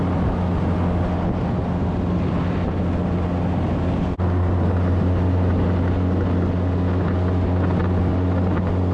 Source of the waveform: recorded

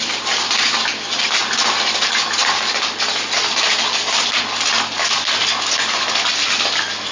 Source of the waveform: recorded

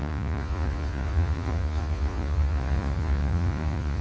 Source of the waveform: remade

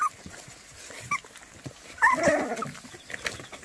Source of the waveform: recorded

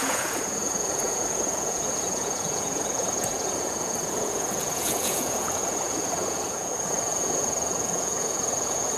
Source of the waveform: remade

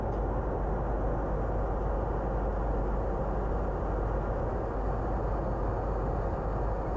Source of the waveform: recorded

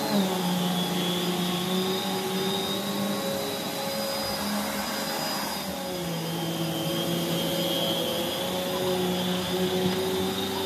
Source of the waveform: recorded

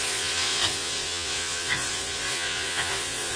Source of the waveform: remade